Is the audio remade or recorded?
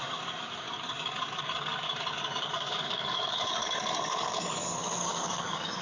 remade